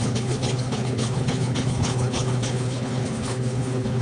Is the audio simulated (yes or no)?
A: yes